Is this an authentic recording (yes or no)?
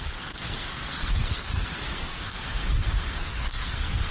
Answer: no